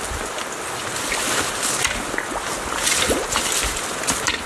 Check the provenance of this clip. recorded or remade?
recorded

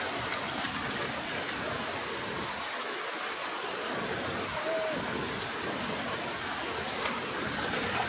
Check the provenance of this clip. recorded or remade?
recorded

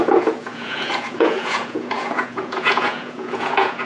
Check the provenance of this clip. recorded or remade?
remade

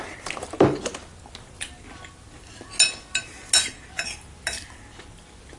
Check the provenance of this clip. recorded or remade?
recorded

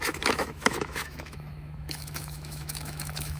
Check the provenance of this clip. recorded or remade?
remade